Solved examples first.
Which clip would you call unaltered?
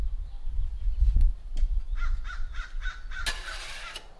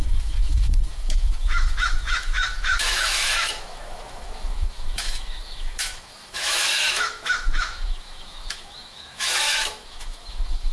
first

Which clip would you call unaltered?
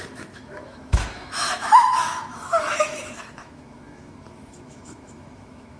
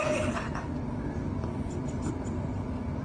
second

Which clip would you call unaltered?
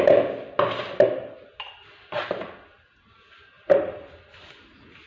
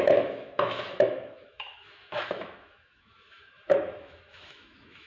first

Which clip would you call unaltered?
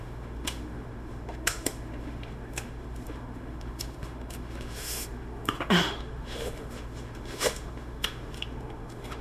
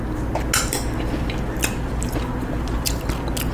second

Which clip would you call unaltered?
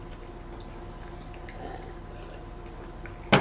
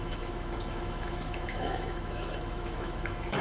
first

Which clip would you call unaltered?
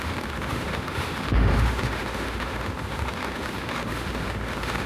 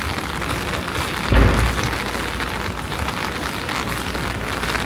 second